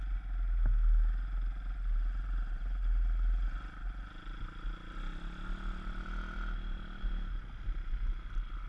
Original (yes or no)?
yes